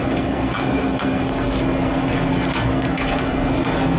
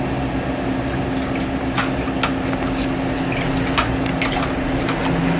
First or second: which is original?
second